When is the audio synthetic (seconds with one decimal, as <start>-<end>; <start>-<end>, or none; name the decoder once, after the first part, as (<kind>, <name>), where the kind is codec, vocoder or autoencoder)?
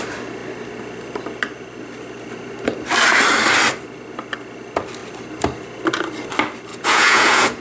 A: 6.7-7.6 (vocoder, Vocos)